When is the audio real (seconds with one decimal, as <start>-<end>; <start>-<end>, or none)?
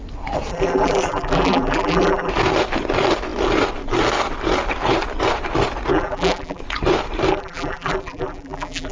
0.0-0.5; 2.3-5.9; 6.6-7.3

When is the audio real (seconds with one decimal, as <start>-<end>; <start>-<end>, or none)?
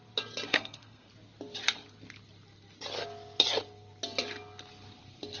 0.0-0.5; 1.1-5.4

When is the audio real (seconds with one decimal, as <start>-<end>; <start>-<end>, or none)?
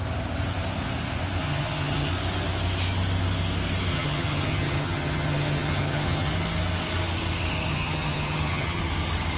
0.0-1.4; 2.1-3.9; 6.3-7.7; 8.8-9.4